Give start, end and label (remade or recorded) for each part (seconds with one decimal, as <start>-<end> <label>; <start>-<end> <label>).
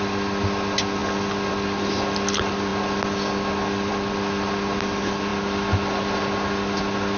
0.0-7.2 recorded